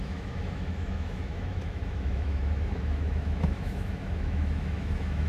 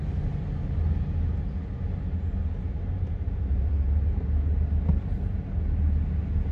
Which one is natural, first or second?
second